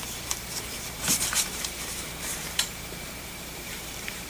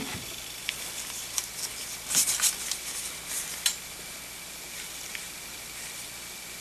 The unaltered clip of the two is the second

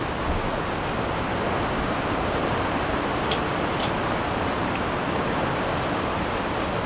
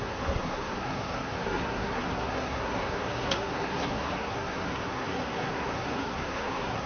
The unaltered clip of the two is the first